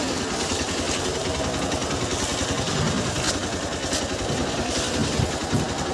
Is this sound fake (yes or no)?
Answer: no